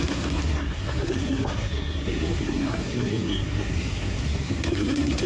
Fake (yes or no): yes